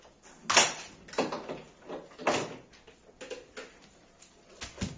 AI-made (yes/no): no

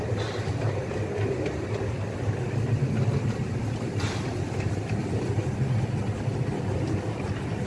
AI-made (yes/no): no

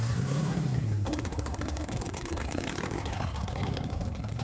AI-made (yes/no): yes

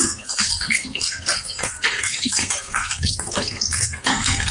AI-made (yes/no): yes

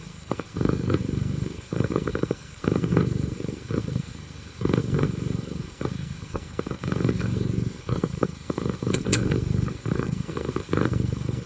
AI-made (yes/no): yes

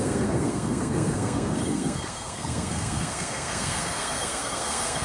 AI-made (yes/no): yes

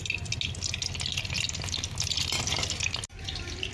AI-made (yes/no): no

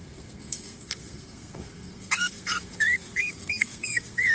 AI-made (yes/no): yes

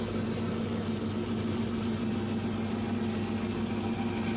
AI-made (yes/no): no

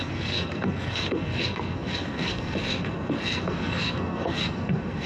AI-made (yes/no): yes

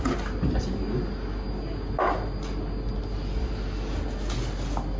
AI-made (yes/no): no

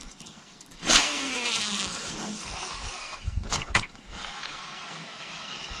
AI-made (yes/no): yes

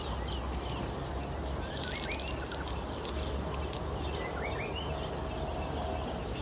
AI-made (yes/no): no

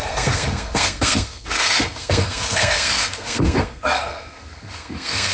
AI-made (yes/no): yes